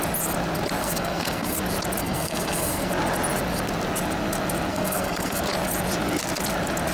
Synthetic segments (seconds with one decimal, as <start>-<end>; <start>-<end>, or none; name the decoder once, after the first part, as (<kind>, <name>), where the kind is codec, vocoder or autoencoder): 0.8-1.6 (codec, SNAC); 2.0-2.9; 4.7-5.4